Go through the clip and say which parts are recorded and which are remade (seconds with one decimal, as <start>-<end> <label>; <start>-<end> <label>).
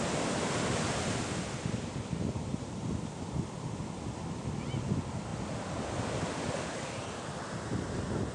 0.0-8.3 recorded